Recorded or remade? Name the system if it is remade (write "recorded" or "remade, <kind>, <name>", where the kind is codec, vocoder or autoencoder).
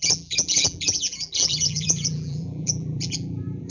remade, vocoder, BigVGAN v2